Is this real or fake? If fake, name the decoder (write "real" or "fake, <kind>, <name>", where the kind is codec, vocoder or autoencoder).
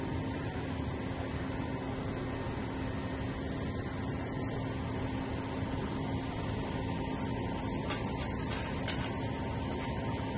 real